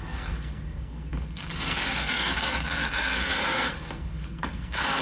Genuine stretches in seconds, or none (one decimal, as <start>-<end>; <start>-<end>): none